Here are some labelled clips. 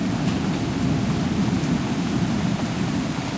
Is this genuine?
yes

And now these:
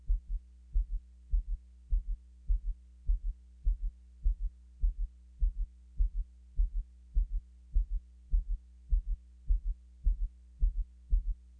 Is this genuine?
yes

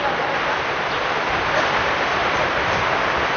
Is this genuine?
yes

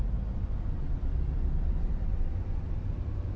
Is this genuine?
yes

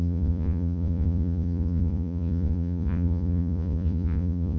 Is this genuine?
no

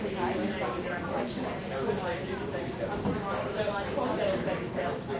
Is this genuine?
yes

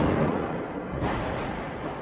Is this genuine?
no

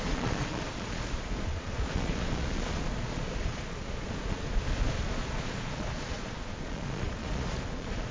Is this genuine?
no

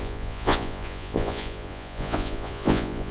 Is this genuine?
no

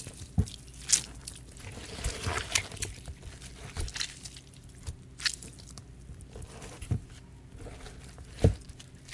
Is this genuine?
yes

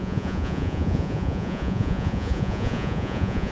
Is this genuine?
no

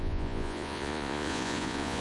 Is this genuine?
no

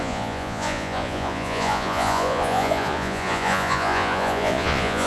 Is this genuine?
no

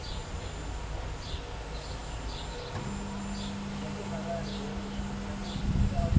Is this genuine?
yes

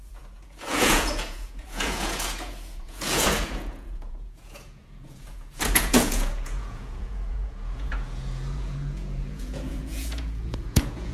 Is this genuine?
no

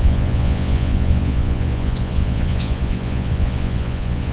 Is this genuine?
no